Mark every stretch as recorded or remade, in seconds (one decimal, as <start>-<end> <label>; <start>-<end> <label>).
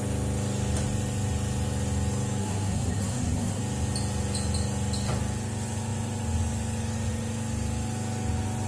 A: 0.0-2.4 recorded; 2.4-3.6 remade; 3.6-8.7 recorded